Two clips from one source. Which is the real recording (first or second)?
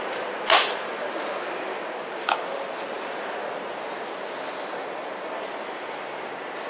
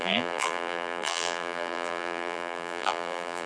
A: first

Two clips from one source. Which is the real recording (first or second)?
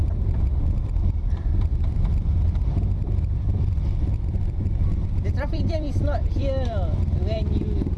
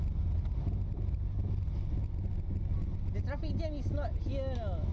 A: second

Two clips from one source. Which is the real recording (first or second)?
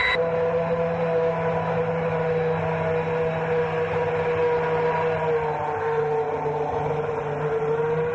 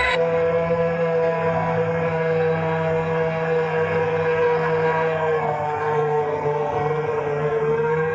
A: first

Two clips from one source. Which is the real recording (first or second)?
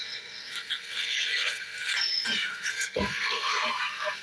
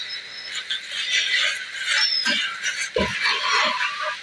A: second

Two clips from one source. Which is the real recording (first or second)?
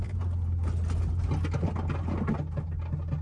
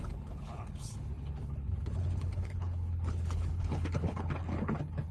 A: first